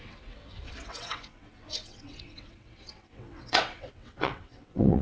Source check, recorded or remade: remade